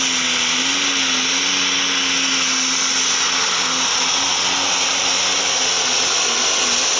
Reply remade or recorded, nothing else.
recorded